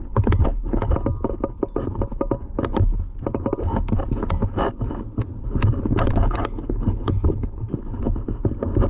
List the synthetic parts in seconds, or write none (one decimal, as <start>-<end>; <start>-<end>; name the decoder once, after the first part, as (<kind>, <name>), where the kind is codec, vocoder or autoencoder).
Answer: 0.0-0.8 (codec, HILCodec); 5.8-7.8